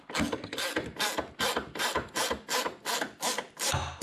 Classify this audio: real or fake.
real